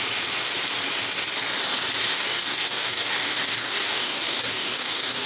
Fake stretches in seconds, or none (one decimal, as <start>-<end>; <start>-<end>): 2.0-5.3